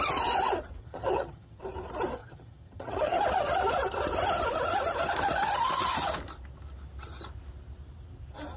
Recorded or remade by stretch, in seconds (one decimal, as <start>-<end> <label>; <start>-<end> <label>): 0.0-0.8 recorded; 0.8-1.6 remade; 1.6-2.2 recorded; 2.2-3.2 remade; 3.2-8.6 recorded